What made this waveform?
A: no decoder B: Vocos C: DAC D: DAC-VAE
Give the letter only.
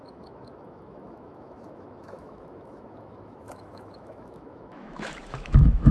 D